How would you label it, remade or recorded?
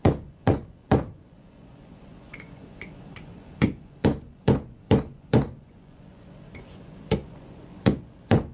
remade